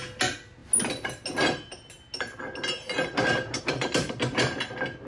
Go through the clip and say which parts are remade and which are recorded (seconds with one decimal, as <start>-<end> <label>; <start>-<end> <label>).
0.0-5.1 recorded